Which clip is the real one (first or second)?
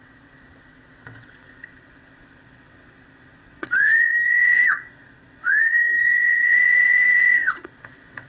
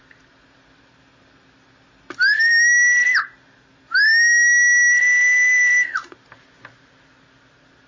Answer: second